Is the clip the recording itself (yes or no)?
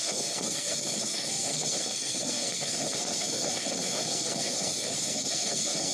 no